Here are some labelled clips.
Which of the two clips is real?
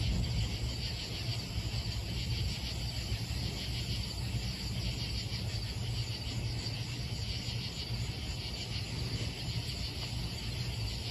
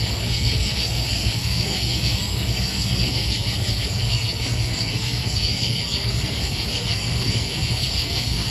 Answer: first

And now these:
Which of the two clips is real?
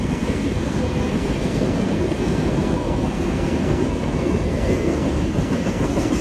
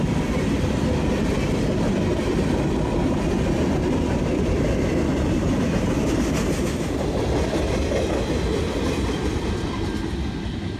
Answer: second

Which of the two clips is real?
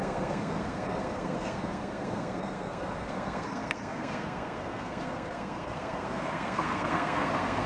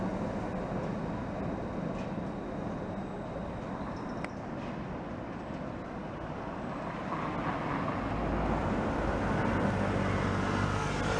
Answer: second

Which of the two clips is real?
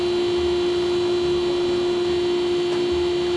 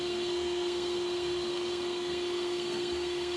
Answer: first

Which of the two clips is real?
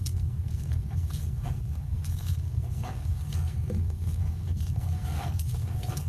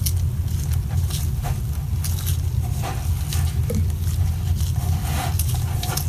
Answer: second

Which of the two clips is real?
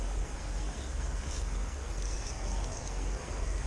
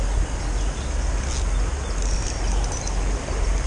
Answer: second